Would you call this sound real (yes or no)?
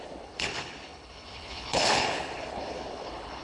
no